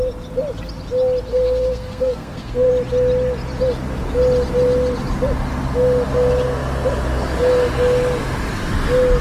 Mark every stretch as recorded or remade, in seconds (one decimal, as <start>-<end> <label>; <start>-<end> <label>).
0.0-1.3 recorded; 1.3-2.7 remade; 2.7-9.2 recorded